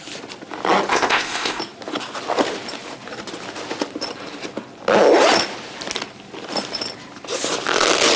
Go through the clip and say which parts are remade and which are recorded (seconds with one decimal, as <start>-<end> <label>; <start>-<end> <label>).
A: 0.0-0.9 recorded; 0.9-1.6 remade; 1.6-8.2 recorded